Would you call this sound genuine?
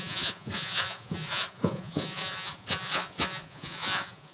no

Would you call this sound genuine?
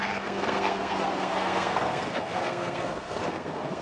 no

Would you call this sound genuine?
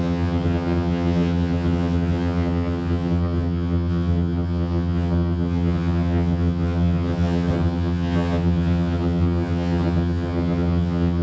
no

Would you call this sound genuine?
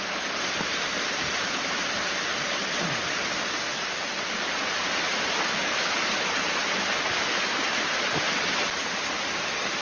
yes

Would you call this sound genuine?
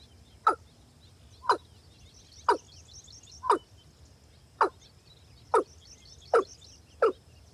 yes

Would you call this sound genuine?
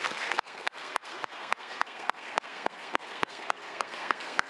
no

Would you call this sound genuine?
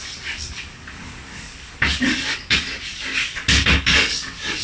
no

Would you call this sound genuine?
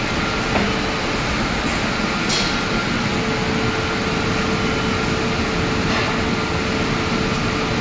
yes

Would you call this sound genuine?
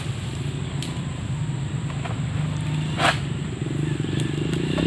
yes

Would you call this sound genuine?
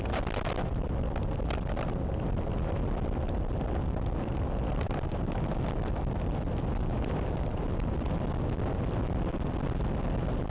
yes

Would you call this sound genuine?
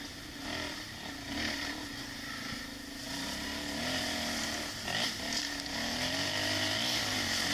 yes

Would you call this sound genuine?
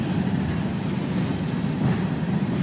yes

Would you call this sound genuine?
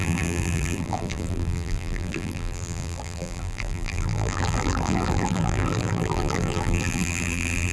no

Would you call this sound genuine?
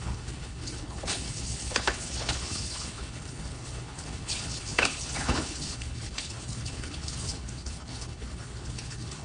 no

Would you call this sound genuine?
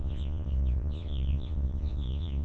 no